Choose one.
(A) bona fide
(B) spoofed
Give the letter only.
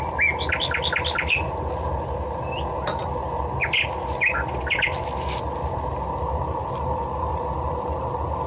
A